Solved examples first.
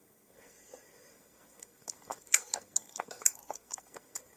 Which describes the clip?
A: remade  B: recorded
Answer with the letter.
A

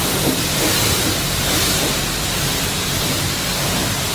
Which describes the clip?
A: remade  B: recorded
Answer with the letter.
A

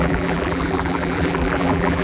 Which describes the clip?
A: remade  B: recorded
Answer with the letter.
A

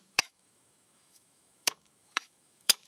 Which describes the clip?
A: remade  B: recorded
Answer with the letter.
A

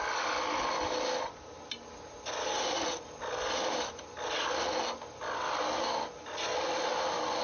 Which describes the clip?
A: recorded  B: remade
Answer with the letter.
A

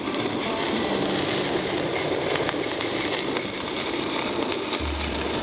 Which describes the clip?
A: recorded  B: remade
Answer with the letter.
B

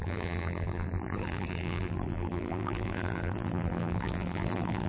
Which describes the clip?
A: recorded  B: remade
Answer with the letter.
B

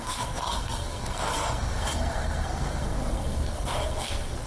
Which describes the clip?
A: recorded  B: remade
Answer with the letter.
B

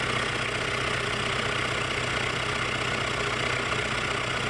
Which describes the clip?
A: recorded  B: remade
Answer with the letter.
A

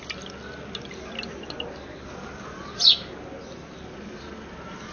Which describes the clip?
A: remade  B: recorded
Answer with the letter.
B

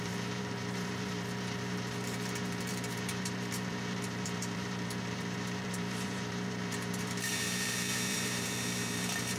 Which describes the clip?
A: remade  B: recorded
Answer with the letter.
A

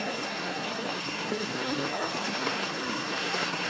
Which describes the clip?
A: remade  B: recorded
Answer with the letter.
A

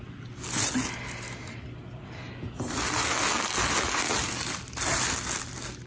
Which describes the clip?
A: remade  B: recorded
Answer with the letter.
B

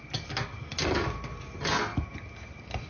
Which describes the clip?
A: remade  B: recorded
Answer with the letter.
B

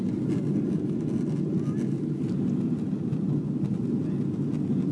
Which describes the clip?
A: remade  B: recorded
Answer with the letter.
B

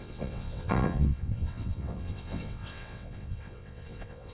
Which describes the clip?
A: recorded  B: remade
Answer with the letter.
B